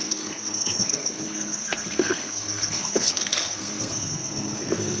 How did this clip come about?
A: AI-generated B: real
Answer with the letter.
A